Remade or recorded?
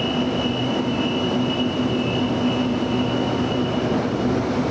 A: recorded